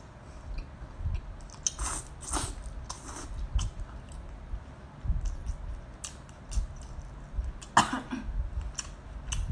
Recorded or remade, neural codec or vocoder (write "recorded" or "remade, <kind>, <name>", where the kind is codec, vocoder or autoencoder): recorded